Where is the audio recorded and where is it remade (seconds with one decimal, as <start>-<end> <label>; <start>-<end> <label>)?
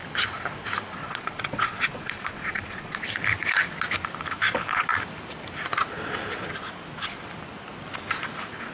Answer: 0.0-1.0 recorded; 1.0-3.0 remade; 3.0-8.7 recorded